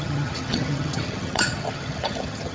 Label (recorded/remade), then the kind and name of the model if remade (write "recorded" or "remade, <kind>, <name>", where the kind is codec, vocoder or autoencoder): remade, vocoder, HiFi-GAN